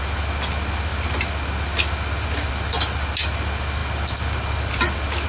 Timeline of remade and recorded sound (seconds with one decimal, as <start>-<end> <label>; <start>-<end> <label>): 0.0-5.3 recorded